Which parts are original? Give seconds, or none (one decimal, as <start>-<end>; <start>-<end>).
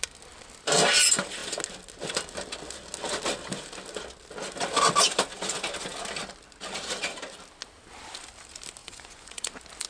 0.0-8.8; 9.5-9.9